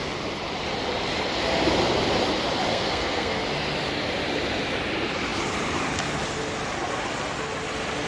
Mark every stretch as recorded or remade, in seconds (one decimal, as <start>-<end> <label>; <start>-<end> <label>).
0.0-2.7 recorded; 2.7-3.4 remade; 3.4-8.1 recorded